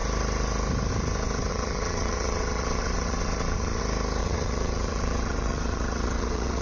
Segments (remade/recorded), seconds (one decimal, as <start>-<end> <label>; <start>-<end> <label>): 0.0-1.5 recorded; 1.5-3.8 remade; 3.8-4.2 recorded; 4.2-6.6 remade